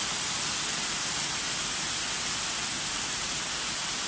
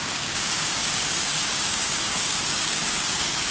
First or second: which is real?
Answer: first